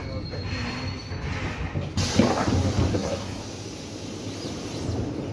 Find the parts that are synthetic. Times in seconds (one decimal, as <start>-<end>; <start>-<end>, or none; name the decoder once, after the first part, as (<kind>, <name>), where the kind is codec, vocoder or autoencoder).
2.9-3.4 (codec, SNAC)